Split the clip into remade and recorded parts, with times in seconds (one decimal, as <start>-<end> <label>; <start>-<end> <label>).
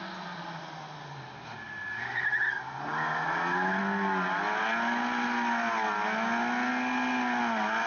0.0-7.9 recorded